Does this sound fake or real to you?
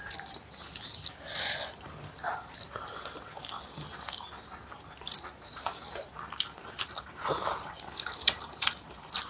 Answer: real